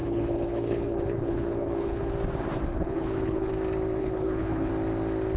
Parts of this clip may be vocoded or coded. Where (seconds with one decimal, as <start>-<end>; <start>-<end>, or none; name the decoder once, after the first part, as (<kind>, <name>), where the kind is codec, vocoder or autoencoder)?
0.0-2.1 (codec, HILCodec); 2.7-3.5; 4.0-4.7